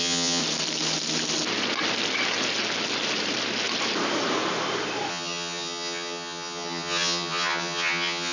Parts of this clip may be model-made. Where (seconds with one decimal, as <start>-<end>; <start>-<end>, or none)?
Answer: 0.0-0.4; 5.1-8.3